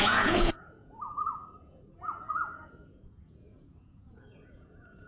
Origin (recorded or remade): remade